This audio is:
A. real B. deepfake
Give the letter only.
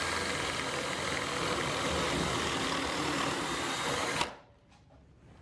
A